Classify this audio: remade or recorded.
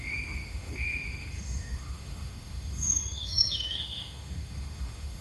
remade